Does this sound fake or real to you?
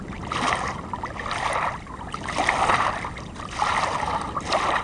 fake